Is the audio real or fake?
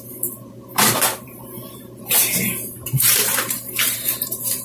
fake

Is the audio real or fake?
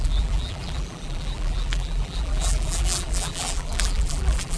fake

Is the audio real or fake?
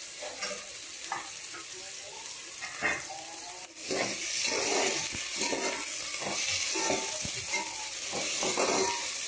real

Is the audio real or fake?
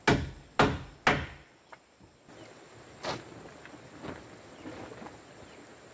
real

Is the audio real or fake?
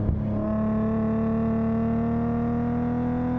real